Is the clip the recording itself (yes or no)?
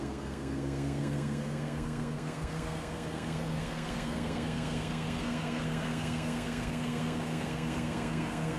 no